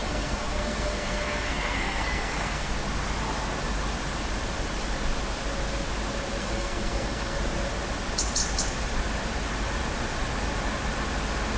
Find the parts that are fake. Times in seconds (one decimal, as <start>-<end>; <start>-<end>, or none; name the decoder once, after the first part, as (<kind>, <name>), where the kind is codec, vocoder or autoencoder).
0.0-2.7 (codec, SNAC); 6.4-7.4